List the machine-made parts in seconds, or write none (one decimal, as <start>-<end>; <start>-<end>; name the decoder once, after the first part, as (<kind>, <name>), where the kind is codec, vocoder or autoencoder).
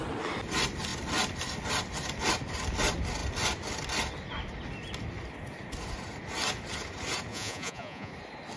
7.3-8.1 (vocoder, Vocos)